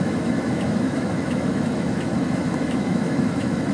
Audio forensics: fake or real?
fake